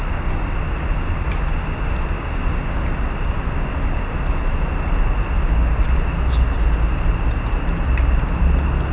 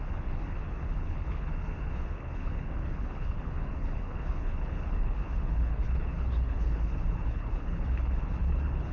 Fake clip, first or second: second